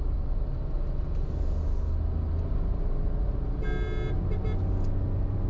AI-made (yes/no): no